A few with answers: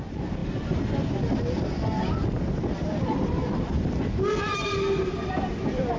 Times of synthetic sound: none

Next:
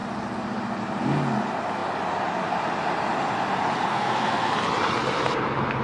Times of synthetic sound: 3.9-4.5

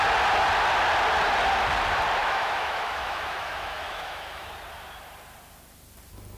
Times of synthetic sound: 2.2-4.5

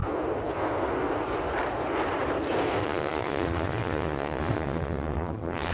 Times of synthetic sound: 2.8-5.7

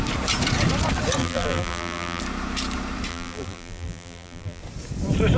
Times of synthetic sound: 1.2-2.2; 3.1-4.6